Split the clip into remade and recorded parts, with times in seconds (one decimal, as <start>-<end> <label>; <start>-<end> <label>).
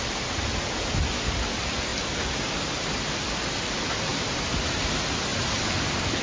0.0-1.9 recorded; 1.9-3.2 remade; 3.2-4.1 recorded; 4.1-4.8 remade; 4.8-6.2 recorded